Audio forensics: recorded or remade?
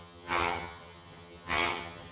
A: remade